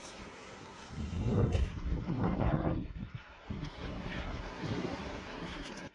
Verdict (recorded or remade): remade